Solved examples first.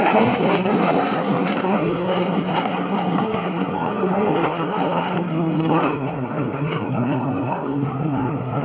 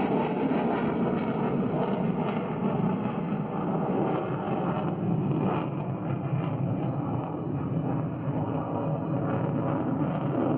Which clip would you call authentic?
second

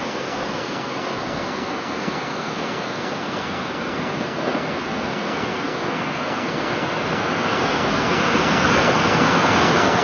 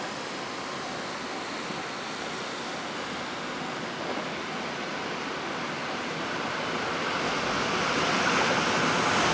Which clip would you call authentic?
second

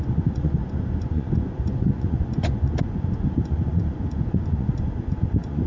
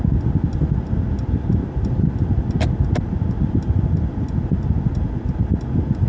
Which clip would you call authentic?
second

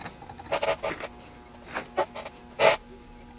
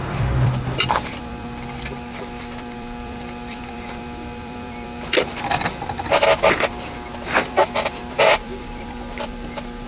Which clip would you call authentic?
first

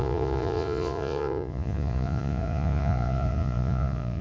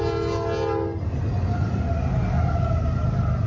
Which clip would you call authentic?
second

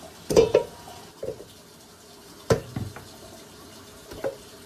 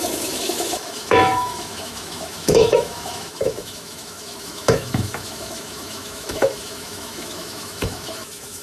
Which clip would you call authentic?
first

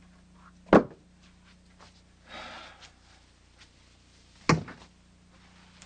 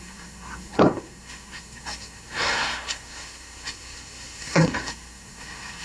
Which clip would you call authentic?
first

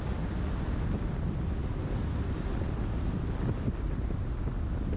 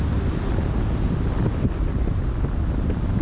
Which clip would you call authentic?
first